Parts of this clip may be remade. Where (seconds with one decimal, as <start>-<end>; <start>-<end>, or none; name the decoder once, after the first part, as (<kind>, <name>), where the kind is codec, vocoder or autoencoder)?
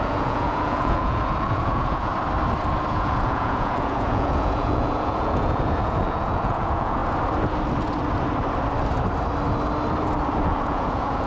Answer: 0.0-2.1 (vocoder, Vocos); 2.9-7.0; 10.5-11.3